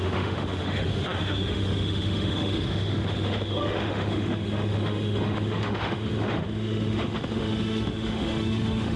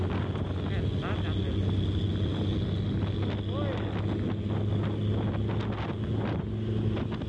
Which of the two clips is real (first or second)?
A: second